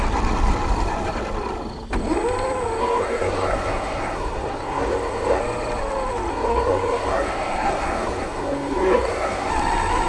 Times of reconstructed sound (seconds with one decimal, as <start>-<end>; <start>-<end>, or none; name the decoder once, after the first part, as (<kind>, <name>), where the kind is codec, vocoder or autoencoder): 2.8-5.4 (codec, SNAC); 6.3-9.5